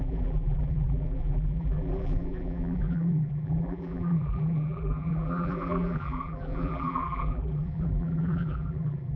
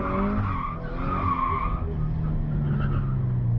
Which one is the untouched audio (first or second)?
second